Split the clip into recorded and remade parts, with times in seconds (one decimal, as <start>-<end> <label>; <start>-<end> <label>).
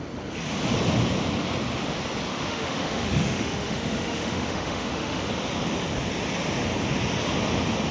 0.0-2.3 recorded; 2.3-5.2 remade; 5.2-7.9 recorded